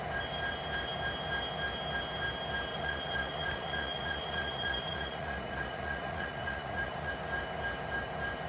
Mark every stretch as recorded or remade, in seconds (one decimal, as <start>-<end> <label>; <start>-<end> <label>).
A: 0.0-2.7 recorded; 2.7-7.1 remade; 7.1-8.5 recorded